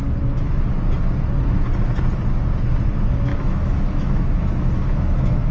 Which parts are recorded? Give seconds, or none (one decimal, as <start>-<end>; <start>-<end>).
0.0-3.3